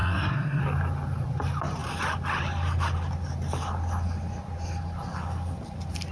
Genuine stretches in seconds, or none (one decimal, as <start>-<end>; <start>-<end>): 0.6-6.1